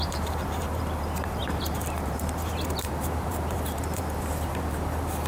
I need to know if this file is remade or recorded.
remade